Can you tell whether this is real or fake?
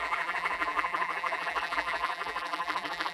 fake